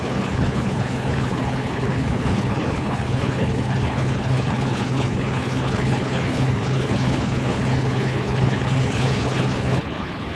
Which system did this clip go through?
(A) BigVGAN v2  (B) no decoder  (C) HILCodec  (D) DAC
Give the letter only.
C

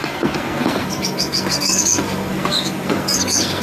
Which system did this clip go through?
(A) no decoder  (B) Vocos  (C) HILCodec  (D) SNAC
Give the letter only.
D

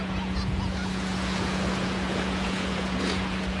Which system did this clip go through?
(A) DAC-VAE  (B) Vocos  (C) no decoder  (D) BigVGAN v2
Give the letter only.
B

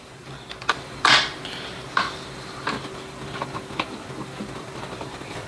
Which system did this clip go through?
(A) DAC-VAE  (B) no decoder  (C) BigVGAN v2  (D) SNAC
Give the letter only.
C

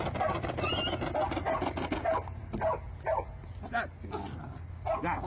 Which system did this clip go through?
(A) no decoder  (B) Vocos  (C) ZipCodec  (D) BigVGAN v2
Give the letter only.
A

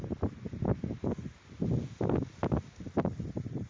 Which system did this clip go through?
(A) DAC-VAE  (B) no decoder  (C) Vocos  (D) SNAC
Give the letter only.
B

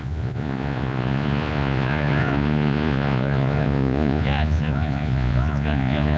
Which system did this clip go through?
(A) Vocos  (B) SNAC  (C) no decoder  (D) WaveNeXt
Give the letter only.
A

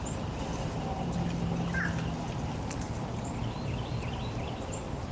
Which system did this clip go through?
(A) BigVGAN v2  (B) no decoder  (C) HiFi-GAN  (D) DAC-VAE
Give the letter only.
B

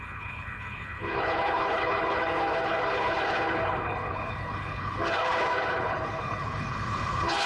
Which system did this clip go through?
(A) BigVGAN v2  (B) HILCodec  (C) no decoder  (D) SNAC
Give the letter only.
B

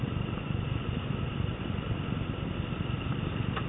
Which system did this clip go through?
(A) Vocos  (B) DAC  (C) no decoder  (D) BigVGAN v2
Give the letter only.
C